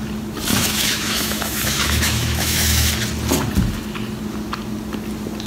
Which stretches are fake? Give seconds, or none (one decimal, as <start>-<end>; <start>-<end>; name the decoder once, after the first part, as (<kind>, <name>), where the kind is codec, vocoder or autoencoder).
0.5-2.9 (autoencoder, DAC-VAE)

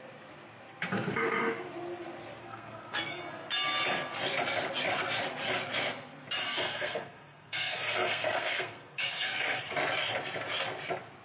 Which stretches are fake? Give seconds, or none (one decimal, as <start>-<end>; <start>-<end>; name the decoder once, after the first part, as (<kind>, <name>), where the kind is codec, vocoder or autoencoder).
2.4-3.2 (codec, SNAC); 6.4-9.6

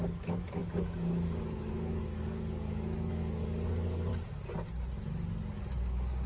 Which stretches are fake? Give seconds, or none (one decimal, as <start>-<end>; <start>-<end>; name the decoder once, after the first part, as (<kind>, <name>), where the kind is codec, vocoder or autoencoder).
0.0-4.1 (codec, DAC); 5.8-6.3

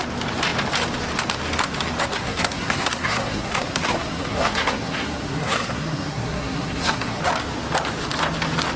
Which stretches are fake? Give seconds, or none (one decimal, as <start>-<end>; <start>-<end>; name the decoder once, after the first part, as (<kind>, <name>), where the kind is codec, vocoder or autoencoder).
2.1-7.2 (codec, SNAC)

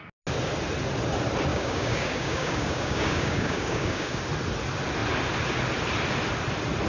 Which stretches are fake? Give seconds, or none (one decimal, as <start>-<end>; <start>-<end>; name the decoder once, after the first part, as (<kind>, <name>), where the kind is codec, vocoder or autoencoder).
1.5-4.2 (codec, DAC)